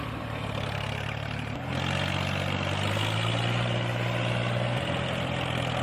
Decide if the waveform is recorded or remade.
recorded